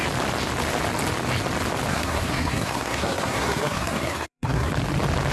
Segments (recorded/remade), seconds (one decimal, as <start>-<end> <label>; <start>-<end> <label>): 0.0-1.9 recorded; 1.9-4.7 remade; 4.7-5.3 recorded